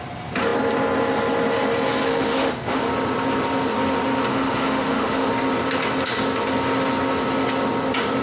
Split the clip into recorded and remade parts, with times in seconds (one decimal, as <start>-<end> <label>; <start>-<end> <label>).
0.0-2.1 recorded; 2.1-2.9 remade; 2.9-4.3 recorded; 4.3-5.3 remade; 5.3-8.2 recorded